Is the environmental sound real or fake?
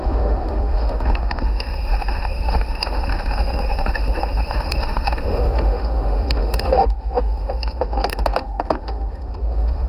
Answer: fake